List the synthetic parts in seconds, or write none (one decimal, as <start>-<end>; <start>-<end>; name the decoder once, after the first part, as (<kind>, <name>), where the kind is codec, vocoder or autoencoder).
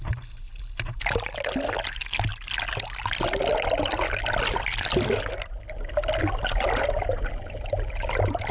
none